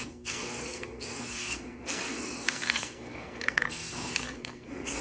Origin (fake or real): fake